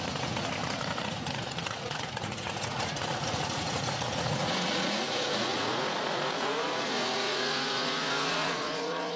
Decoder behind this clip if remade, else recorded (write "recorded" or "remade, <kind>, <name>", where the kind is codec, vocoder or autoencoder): remade, vocoder, Vocos